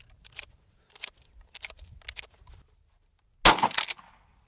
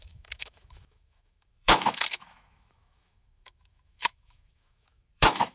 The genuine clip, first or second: first